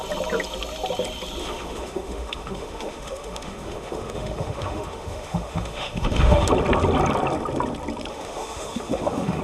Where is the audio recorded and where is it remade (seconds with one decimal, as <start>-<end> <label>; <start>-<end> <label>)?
0.0-1.4 recorded; 1.4-6.5 remade; 6.5-8.1 recorded; 8.1-9.4 remade